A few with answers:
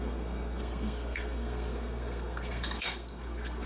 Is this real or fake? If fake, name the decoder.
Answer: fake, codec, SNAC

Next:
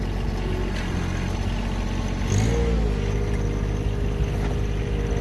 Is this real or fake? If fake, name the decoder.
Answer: real